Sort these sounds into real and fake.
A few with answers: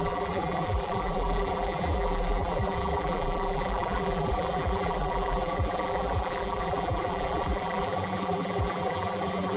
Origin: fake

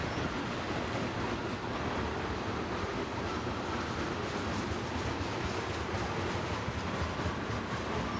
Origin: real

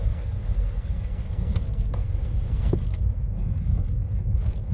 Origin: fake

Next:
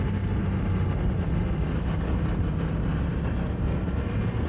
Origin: real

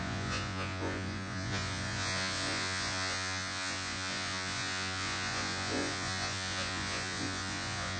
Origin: fake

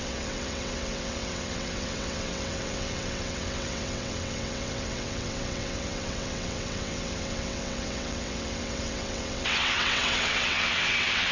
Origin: fake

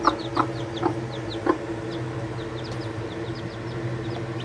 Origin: real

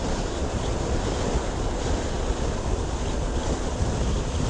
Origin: real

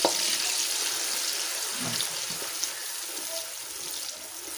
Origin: real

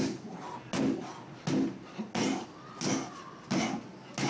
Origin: real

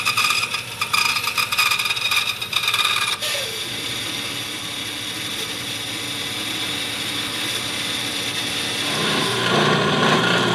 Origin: real